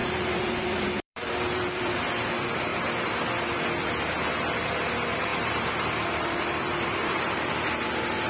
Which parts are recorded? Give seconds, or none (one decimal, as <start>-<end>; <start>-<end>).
2.1-5.3; 7.7-8.3